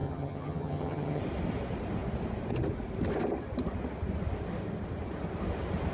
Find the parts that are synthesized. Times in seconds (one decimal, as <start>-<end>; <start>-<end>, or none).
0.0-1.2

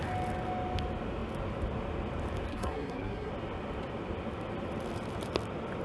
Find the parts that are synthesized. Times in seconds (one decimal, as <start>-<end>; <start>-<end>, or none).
2.5-3.3

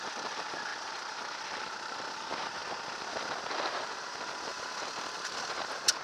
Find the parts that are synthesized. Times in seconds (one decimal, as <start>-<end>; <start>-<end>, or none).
none

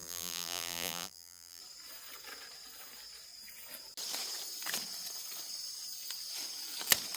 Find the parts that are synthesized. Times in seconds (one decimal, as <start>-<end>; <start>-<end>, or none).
0.0-1.6

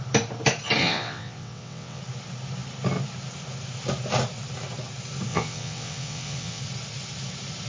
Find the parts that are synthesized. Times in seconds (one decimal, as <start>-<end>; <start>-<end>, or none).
0.8-2.0; 5.3-6.6